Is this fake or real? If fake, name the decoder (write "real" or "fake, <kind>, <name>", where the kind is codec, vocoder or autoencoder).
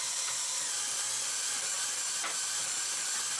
real